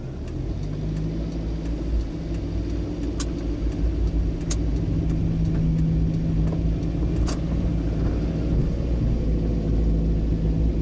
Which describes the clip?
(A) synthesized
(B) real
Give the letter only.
B